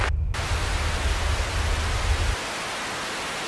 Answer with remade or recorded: recorded